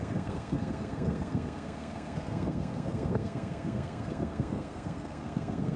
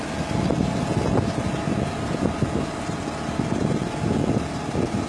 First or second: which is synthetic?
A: first